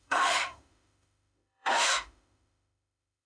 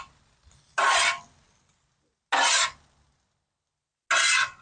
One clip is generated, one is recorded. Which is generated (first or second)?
first